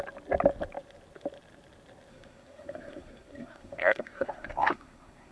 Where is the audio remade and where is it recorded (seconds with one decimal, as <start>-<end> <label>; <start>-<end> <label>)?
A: 0.0-2.1 recorded; 2.1-5.3 remade